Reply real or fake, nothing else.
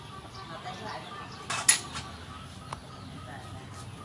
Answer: real